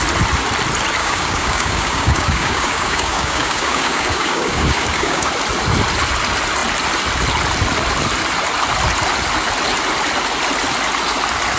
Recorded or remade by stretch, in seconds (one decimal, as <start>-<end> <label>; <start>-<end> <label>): 0.0-1.0 recorded; 1.0-5.3 remade; 5.3-11.6 recorded